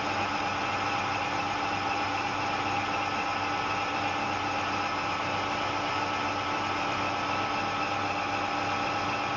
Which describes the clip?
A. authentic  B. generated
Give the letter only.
A